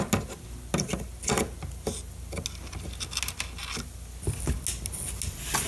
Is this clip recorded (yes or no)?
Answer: yes